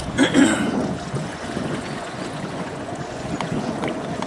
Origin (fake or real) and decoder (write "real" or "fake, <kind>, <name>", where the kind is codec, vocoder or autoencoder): fake, vocoder, Vocos